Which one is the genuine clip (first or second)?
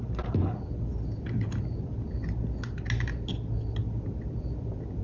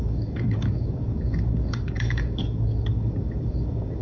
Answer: first